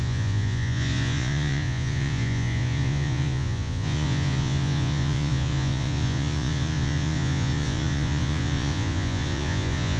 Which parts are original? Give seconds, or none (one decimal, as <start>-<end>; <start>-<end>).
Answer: none